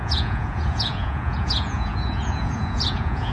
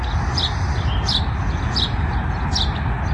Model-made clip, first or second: first